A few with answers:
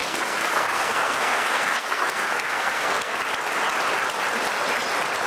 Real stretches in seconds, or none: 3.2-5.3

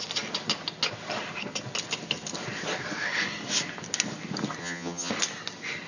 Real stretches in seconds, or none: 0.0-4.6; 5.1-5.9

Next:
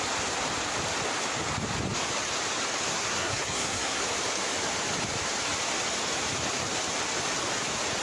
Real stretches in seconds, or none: 0.0-2.9; 4.0-8.0

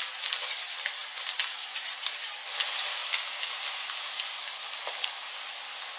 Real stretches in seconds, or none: 0.0-6.0

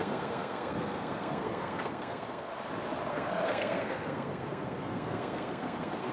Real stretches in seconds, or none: 2.5-3.1

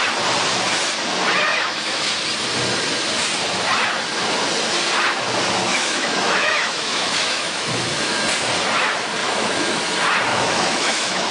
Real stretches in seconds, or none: 0.0-1.5; 2.1-5.7; 8.2-9.2; 9.8-10.3

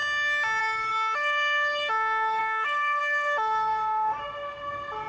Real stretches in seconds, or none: 0.0-0.6; 4.2-5.1

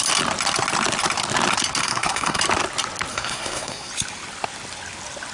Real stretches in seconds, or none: 0.0-1.8; 2.4-3.1; 3.9-5.3